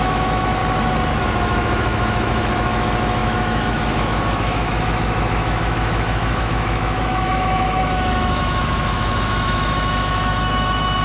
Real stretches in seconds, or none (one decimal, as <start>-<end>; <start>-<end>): 0.6-1.2